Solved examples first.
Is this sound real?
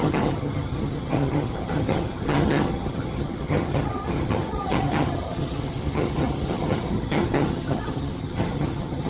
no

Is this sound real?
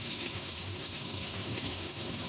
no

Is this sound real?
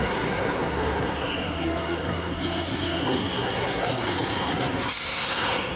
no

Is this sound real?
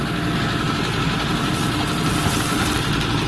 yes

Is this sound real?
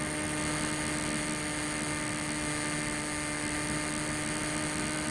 yes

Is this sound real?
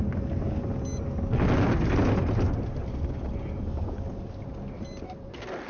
yes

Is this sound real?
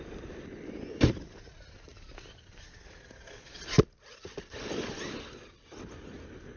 yes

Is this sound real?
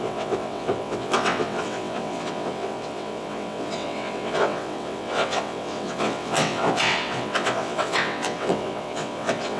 no